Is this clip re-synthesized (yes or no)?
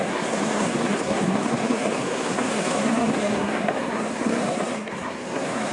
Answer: yes